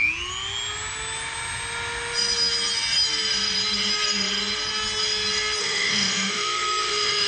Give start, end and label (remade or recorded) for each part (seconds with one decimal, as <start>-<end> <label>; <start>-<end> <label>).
0.0-5.6 recorded; 5.6-7.3 remade

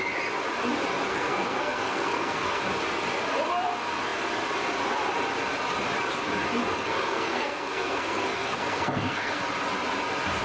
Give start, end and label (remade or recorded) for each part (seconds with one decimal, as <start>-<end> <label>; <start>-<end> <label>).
0.0-1.1 recorded; 1.1-2.6 remade; 2.6-6.7 recorded; 6.7-9.4 remade; 9.4-10.4 recorded

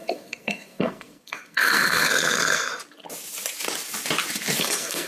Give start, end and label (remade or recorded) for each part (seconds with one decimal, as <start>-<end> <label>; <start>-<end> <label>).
0.0-2.7 remade; 2.7-4.6 recorded; 4.6-5.1 remade

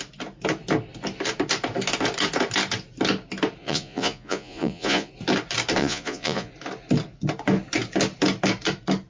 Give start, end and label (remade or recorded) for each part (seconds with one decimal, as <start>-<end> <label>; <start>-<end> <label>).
0.0-3.6 recorded; 3.6-5.1 remade; 5.1-5.8 recorded; 5.8-6.5 remade; 6.5-9.1 recorded

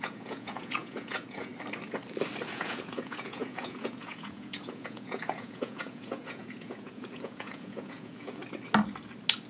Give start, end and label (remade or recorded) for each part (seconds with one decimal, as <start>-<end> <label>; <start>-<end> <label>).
0.0-1.5 remade; 1.5-2.5 recorded; 2.5-8.4 remade; 8.4-9.5 recorded